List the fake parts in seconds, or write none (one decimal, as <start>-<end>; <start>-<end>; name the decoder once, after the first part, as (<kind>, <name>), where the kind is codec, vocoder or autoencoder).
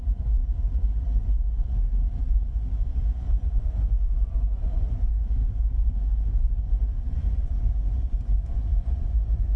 0.0-1.7 (vocoder, Vocos); 2.2-9.6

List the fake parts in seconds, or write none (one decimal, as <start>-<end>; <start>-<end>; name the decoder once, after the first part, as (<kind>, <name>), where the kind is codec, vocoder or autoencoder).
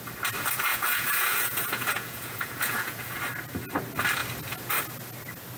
0.7-3.2 (vocoder, Vocos)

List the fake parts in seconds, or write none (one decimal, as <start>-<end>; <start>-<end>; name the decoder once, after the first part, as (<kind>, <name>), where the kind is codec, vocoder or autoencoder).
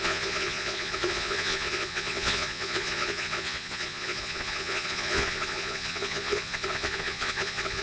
0.0-7.8 (vocoder, Vocos)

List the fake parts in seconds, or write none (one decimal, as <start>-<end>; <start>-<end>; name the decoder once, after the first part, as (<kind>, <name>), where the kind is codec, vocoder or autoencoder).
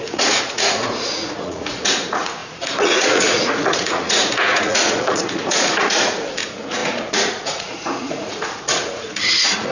0.0-9.7 (vocoder, Vocos)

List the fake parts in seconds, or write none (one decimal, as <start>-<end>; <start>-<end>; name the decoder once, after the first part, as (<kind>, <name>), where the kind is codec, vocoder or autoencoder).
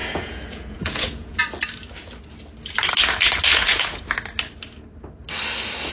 0.0-1.4 (vocoder, Vocos); 3.5-4.0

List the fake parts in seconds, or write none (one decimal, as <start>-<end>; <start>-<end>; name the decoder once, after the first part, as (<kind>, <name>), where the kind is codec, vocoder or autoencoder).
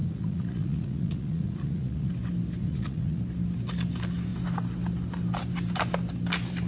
0.0-2.1 (vocoder, Vocos); 2.6-3.2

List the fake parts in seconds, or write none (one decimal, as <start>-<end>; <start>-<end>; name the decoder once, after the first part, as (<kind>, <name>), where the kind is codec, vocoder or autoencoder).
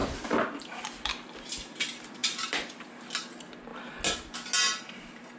none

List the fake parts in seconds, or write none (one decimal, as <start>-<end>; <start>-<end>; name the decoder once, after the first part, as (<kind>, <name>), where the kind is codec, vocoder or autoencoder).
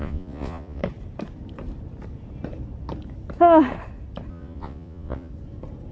0.0-0.8 (vocoder, Vocos); 4.3-5.3